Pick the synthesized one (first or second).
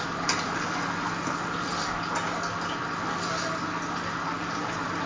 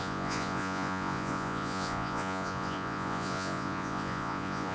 second